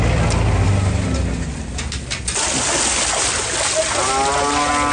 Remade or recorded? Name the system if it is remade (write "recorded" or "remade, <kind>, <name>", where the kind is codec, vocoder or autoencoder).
recorded